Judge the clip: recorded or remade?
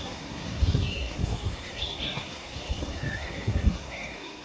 remade